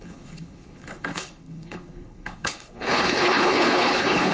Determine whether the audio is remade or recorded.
remade